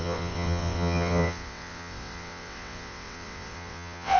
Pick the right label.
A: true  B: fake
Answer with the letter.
B